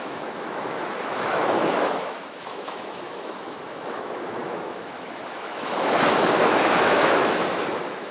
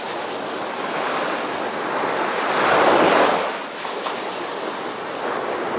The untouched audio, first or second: second